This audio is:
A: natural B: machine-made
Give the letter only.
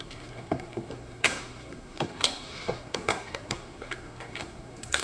B